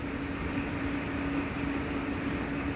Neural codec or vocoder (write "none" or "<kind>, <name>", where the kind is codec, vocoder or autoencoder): none